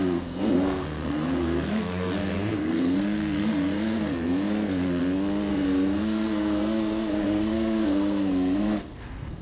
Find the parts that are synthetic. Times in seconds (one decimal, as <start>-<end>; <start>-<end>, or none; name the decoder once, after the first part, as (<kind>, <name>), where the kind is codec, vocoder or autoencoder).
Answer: 0.0-5.0 (codec, SNAC); 5.5-9.4